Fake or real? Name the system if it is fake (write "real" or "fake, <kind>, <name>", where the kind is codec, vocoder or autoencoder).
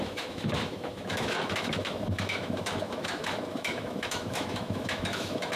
fake, autoencoder, DAC-VAE